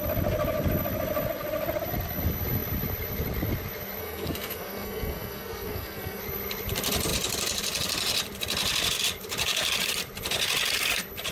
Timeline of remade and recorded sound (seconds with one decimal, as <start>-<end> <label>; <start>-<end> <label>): 0.0-4.0 recorded; 4.0-6.2 remade; 6.2-11.3 recorded